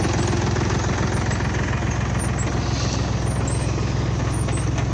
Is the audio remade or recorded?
recorded